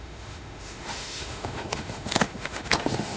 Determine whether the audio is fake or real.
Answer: fake